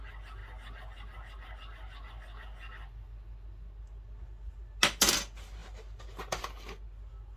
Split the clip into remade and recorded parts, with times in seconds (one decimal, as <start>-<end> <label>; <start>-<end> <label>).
0.0-7.4 recorded